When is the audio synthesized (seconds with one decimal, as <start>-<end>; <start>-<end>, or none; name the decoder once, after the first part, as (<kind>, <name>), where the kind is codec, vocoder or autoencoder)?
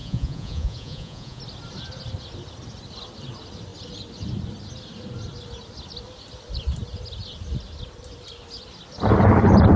0.0-1.4 (vocoder, Vocos)